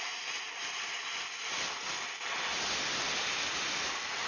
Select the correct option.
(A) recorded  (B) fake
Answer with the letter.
A